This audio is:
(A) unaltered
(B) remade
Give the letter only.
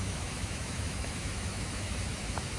B